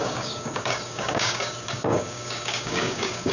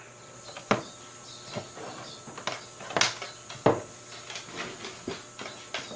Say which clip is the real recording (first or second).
second